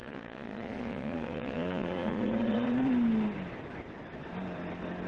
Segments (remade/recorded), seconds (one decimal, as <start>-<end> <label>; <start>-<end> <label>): 0.0-2.9 remade; 2.9-5.1 recorded